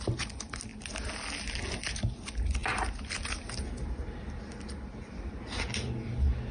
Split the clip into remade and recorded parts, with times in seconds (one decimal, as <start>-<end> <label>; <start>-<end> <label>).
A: 0.0-6.5 recorded